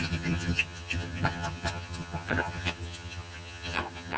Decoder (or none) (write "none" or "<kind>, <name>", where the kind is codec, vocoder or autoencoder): vocoder, HiFi-GAN